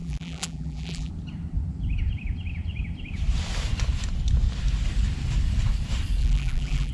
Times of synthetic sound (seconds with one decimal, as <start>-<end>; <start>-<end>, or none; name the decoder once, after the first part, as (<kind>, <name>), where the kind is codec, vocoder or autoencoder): 0.0-1.1 (vocoder, BigVGAN v2); 6.2-6.9